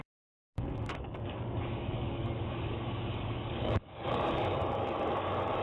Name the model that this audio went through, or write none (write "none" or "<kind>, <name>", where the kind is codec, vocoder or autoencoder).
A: codec, DAC